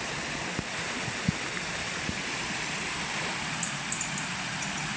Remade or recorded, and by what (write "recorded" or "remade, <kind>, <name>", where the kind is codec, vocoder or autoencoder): recorded